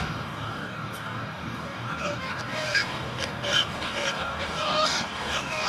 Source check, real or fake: fake